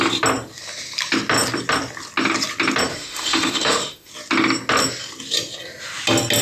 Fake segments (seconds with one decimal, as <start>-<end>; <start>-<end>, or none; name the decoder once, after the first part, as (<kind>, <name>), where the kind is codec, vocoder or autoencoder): 2.9-4.1 (autoencoder, DAC-VAE)